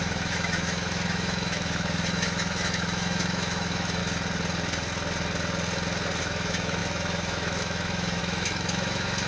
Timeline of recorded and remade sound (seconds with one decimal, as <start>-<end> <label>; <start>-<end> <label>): 0.0-4.0 remade; 4.0-6.2 recorded; 6.2-9.3 remade

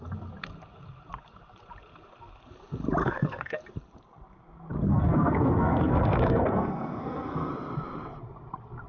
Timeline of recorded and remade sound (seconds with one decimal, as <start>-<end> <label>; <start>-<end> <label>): 0.0-3.0 recorded; 3.0-3.6 remade; 3.6-4.9 recorded; 4.9-7.5 remade; 7.5-8.9 recorded

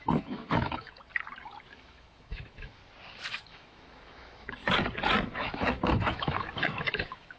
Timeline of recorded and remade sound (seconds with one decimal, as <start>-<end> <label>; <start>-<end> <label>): 0.0-1.1 remade; 1.1-1.6 recorded; 1.6-2.8 remade; 2.8-3.3 recorded; 3.3-4.6 remade; 4.6-5.2 recorded; 5.2-7.4 remade

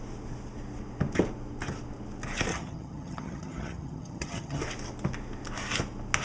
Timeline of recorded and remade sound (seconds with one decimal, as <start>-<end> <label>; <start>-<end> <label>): 0.0-2.5 recorded; 2.5-4.6 remade; 4.6-6.2 recorded

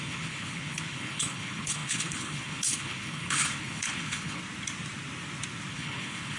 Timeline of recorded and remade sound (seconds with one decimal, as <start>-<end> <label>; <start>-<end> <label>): 0.0-4.4 remade; 4.4-5.7 recorded; 5.7-6.4 remade